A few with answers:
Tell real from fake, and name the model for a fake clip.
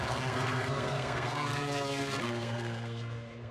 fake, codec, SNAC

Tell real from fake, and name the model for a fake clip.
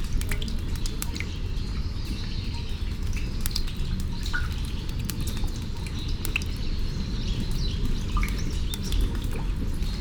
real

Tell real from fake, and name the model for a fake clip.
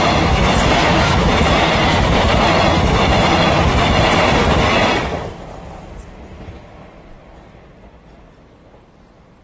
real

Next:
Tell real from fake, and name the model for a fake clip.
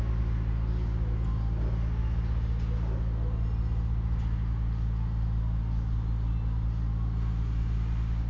real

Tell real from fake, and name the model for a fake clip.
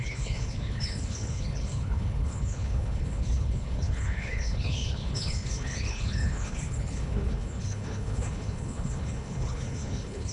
fake, codec, HILCodec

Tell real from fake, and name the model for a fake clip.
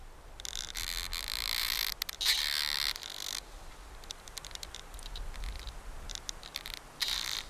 real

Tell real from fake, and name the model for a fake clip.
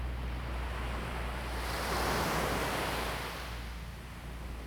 real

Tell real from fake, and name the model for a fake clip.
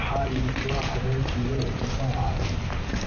fake, vocoder, BigVGAN v2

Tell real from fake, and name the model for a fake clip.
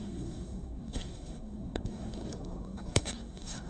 fake, codec, SNAC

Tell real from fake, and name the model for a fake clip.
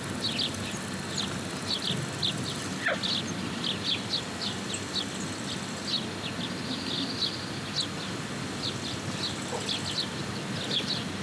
real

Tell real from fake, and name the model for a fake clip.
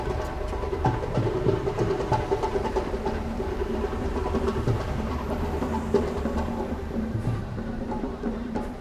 fake, vocoder, BigVGAN v2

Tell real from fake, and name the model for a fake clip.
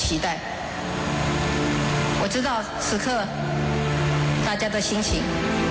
real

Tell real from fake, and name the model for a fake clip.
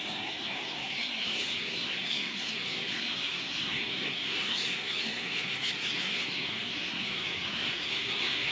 fake, codec, SNAC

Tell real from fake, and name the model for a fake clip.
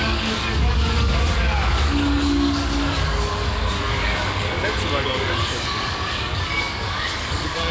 fake, codec, DAC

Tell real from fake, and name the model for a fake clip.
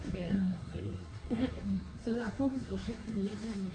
fake, codec, SNAC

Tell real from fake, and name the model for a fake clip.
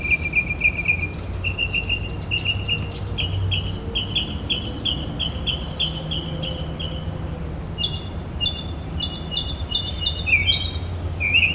real